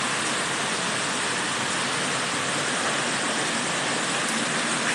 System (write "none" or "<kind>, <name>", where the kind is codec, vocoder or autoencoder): none